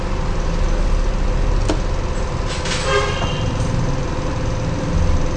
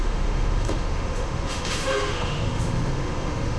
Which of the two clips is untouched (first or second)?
first